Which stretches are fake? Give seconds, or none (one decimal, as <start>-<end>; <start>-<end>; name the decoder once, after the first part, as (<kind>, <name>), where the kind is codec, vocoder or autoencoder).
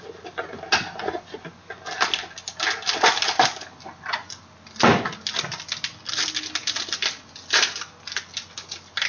none